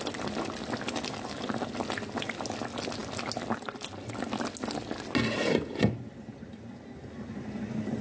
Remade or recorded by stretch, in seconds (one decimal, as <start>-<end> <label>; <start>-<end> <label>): 0.0-8.0 recorded